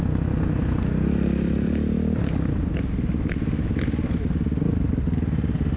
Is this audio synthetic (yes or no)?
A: no